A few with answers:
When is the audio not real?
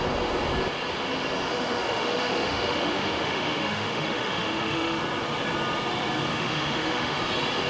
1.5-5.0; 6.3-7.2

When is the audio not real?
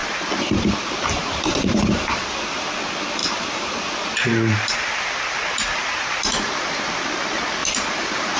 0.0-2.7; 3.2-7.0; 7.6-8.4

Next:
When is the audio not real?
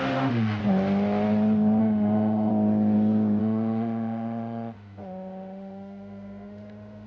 0.0-0.6; 1.8-2.5; 3.4-7.1